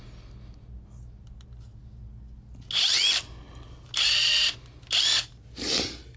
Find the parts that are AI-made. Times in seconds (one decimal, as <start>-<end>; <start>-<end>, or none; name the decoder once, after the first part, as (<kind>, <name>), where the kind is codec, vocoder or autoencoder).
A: none